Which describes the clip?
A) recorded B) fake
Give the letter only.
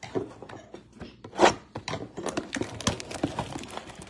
A